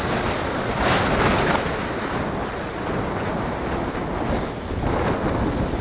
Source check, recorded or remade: recorded